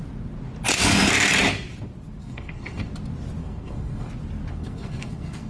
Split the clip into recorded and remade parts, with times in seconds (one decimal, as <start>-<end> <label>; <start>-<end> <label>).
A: 0.0-2.2 recorded; 2.2-2.9 remade; 2.9-3.4 recorded; 3.4-4.1 remade; 4.1-4.5 recorded; 4.5-5.5 remade